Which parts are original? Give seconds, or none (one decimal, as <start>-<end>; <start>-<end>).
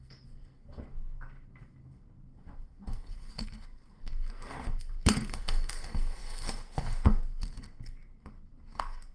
none